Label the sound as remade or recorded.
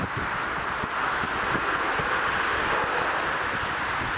recorded